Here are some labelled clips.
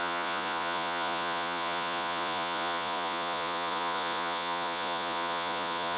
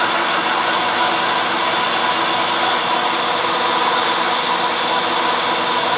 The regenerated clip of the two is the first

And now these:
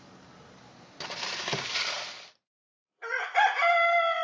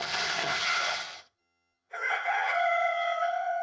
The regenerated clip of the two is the second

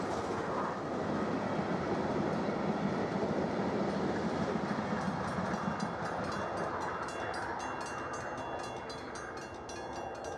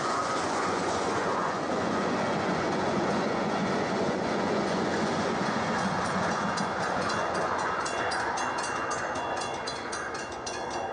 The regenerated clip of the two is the second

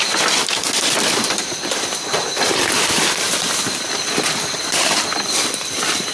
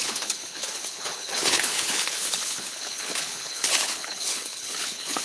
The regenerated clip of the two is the second